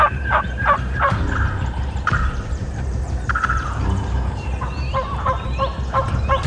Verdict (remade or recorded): remade